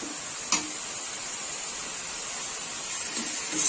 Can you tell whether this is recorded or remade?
recorded